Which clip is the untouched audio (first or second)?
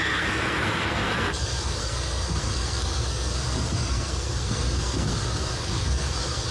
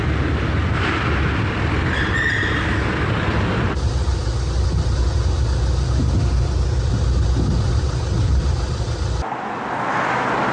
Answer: second